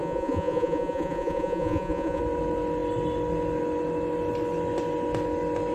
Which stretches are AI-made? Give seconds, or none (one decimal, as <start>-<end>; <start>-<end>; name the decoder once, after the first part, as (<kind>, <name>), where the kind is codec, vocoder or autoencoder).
0.0-2.2 (vocoder, Vocos)